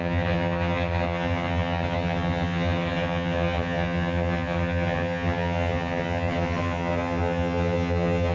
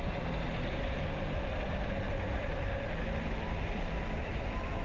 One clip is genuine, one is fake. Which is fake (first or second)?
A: first